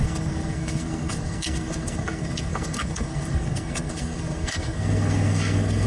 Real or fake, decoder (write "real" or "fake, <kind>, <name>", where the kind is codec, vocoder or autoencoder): fake, codec, SNAC